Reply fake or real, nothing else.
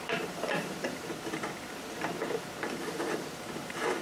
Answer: fake